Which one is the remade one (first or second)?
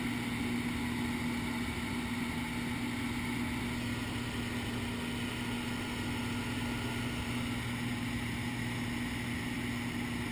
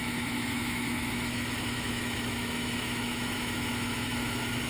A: second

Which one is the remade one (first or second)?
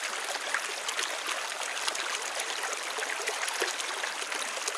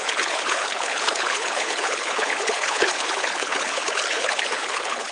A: second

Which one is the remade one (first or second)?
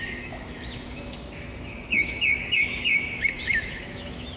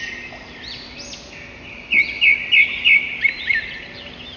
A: first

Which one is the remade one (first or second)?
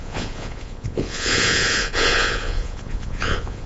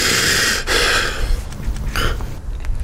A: first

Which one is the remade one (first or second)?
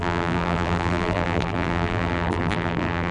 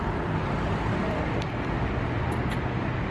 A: first